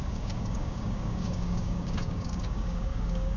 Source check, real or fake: fake